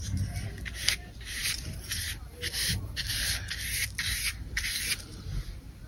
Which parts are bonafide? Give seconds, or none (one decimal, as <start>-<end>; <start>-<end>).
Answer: 0.0-5.9